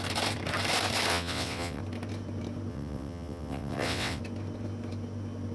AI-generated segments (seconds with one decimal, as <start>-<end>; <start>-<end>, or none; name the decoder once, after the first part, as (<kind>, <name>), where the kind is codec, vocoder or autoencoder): 1.1-1.8 (vocoder, WaveNeXt); 2.7-4.2